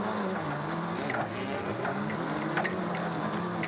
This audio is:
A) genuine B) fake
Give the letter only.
A